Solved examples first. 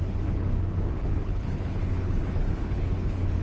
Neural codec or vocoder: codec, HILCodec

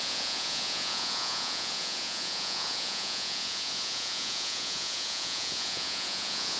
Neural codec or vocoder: vocoder, Vocos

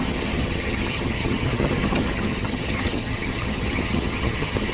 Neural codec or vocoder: vocoder, HiFi-GAN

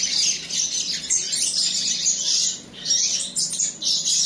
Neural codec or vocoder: none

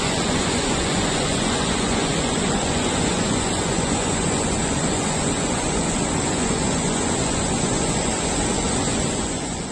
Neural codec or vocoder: vocoder, Vocos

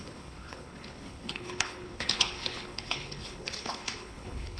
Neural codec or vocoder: codec, HILCodec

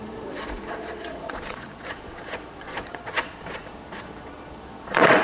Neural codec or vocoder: vocoder, Vocos